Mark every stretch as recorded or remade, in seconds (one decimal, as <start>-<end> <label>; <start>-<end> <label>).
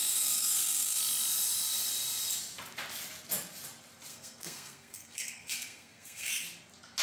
0.0-1.0 remade; 1.0-4.1 recorded; 4.1-6.3 remade; 6.3-7.0 recorded